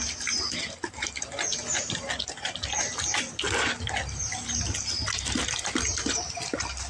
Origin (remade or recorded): recorded